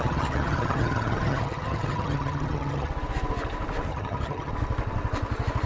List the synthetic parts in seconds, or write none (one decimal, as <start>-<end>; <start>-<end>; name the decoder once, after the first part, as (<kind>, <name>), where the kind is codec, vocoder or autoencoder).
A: 0.0-2.9 (vocoder, HiFi-GAN); 3.9-4.5